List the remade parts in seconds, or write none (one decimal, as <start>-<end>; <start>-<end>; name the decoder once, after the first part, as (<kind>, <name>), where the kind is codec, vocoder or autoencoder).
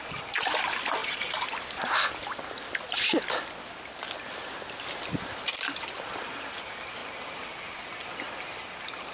none